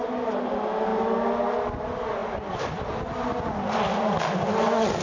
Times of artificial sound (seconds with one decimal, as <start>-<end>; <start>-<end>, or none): none